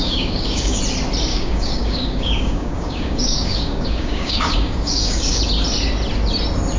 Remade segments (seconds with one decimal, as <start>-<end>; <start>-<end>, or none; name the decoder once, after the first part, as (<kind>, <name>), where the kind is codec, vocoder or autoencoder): 0.0-0.8 (codec, DAC); 1.3-5.4